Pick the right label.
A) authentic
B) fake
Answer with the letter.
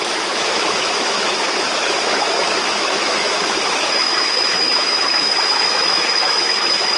B